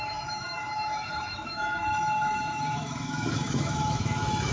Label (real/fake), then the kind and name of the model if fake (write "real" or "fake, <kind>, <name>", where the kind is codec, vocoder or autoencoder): fake, autoencoder, DAC-VAE